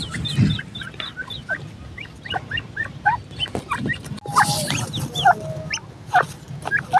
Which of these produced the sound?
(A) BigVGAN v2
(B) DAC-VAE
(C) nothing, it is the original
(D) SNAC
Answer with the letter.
C